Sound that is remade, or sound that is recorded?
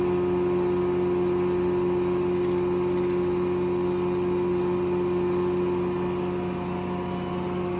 recorded